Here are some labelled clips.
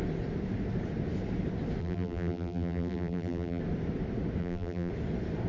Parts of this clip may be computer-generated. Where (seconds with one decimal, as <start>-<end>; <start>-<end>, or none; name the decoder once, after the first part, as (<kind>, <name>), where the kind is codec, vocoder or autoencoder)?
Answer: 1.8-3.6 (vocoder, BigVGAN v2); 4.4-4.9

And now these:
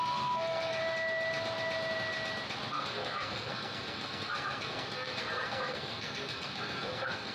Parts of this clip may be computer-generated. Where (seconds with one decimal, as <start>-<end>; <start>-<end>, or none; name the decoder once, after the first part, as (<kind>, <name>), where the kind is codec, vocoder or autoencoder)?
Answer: 0.0-0.8 (codec, SNAC); 2.7-7.3

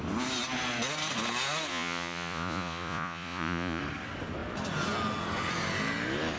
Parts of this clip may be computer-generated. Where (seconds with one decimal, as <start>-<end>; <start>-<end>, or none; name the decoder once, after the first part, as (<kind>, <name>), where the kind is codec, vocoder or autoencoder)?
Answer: 1.7-3.8 (vocoder, Vocos)

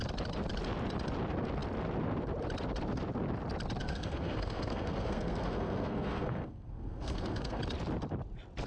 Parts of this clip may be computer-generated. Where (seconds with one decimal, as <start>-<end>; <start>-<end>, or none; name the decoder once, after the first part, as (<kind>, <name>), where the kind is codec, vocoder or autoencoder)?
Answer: 3.8-7.6 (codec, SNAC)

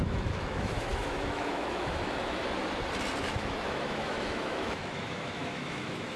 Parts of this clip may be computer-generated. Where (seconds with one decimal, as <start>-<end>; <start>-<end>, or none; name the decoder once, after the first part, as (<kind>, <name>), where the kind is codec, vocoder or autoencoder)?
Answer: 0.0-2.4 (autoencoder, DAC-VAE); 3.2-6.2

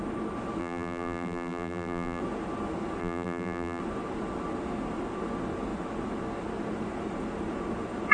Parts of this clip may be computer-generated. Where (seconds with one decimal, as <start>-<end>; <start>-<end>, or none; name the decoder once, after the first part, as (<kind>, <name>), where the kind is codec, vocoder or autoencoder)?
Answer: 0.6-2.2 (vocoder, BigVGAN v2); 3.0-3.8

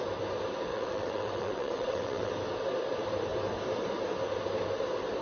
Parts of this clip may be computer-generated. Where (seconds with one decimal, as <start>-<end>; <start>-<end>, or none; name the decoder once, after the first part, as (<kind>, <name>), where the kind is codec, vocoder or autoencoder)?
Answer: 0.7-2.3 (vocoder, WaveNeXt)

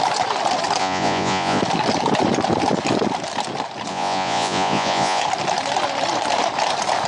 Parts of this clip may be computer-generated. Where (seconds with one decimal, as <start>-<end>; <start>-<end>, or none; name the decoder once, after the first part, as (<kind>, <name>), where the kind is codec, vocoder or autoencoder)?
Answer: 0.8-1.6 (vocoder, Vocos); 3.9-5.2